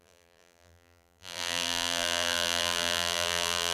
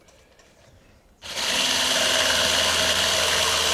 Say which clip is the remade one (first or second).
first